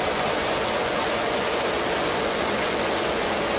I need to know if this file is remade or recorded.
remade